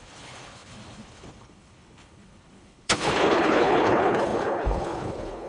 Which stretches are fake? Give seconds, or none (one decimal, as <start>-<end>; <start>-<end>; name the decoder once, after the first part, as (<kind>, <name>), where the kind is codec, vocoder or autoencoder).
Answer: 0.0-5.5 (codec, HILCodec)